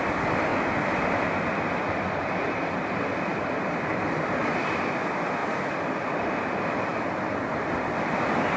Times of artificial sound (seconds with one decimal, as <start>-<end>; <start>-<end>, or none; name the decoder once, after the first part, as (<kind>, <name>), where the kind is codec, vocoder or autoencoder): 0.0-0.5 (vocoder, BigVGAN v2); 2.1-8.6